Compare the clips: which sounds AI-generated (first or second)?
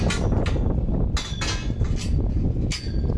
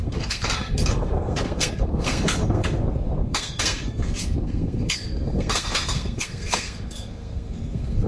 second